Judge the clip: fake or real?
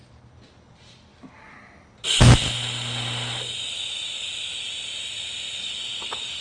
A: real